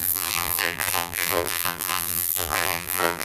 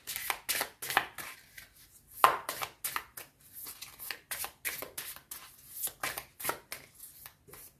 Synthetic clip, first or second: first